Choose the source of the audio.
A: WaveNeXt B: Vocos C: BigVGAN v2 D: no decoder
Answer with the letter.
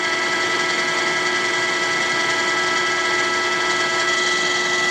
D